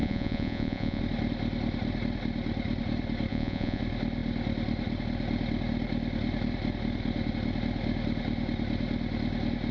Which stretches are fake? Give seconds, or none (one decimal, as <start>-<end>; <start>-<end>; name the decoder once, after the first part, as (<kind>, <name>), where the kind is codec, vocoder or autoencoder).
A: 0.0-1.0 (vocoder, Vocos); 3.3-3.8